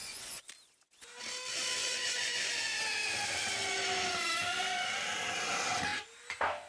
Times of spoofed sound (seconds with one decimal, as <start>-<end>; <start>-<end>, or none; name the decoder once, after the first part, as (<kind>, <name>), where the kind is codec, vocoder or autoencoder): 0.0-0.5 (vocoder, Vocos); 1.8-2.5